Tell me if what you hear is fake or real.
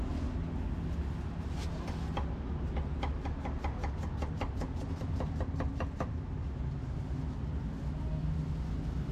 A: real